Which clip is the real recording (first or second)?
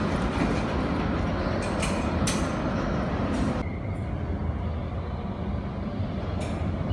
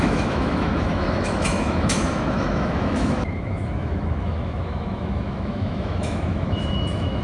first